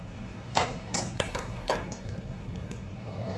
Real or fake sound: fake